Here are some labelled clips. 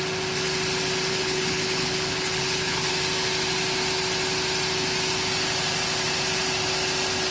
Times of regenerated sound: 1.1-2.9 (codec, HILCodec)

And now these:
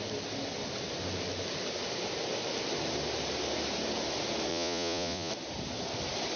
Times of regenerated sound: 4.5-5.3 (vocoder, Vocos)

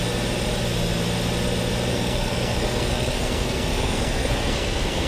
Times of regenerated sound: 1.9-5.1 (codec, SNAC)